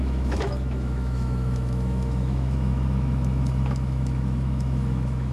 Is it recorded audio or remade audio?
remade